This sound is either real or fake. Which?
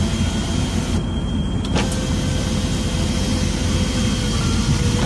real